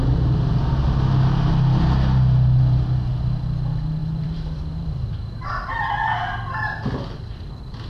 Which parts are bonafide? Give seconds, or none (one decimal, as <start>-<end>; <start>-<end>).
0.0-4.0; 5.5-7.9